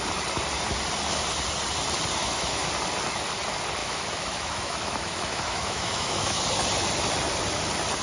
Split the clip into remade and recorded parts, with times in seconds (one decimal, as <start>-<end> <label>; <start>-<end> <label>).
0.0-2.2 recorded; 2.2-2.7 remade; 2.7-3.8 recorded; 3.8-6.4 remade; 6.4-8.0 recorded